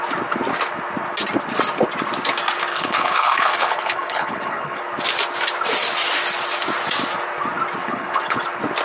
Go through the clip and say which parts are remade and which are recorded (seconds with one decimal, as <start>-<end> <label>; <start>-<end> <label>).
0.0-2.7 recorded; 2.7-4.8 remade; 4.8-7.8 recorded; 7.8-8.4 remade; 8.4-8.8 recorded